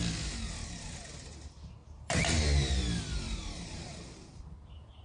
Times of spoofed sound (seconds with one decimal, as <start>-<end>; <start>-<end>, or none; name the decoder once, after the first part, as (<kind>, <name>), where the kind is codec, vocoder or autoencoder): 1.8-4.4 (vocoder, BigVGAN v2)